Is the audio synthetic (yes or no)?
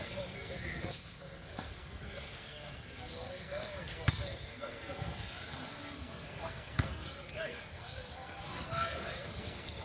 yes